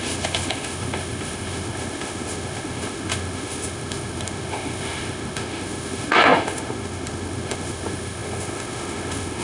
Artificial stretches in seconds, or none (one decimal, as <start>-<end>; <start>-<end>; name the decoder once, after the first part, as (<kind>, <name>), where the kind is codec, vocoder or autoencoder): 0.0-9.4 (autoencoder, DAC-VAE)